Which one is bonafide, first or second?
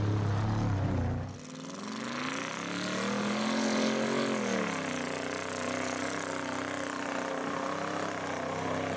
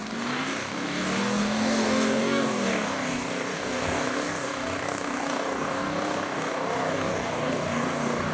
first